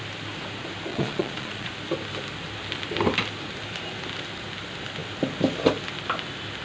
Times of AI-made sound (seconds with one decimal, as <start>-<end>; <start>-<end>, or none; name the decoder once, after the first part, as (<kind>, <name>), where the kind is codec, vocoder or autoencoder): 0.9-1.7 (vocoder, Vocos)

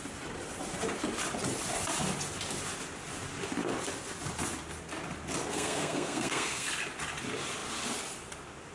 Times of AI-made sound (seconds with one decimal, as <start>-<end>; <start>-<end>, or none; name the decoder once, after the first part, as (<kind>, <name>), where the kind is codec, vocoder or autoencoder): 5.5-6.7 (codec, SNAC)

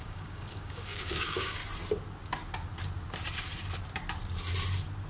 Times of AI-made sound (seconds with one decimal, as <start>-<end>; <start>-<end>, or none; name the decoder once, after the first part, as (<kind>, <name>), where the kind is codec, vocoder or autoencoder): 0.0-1.6 (codec, DAC)

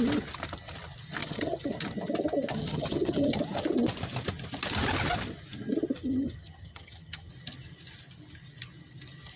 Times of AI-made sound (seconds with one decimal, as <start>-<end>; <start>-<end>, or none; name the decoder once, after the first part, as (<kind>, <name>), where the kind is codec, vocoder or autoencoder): 1.2-1.7 (vocoder, HiFi-GAN); 2.6-3.4; 6.0-7.3

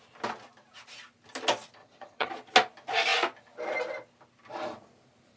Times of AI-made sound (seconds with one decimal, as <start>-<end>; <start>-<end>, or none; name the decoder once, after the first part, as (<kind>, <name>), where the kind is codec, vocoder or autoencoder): 1.8-2.3 (vocoder, HiFi-GAN)

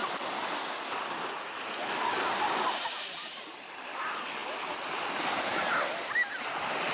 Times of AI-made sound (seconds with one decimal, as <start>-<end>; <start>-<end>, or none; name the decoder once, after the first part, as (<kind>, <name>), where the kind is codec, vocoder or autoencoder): none

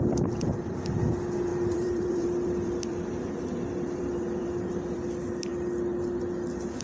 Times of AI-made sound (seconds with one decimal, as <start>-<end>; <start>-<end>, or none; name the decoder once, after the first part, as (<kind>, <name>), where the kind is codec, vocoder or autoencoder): 1.5-5.1 (vocoder, BigVGAN v2)

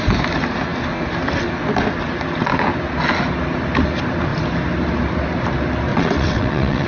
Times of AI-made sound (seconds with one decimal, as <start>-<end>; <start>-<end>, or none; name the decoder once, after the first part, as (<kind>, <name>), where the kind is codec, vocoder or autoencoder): 5.9-6.9 (vocoder, WaveNeXt)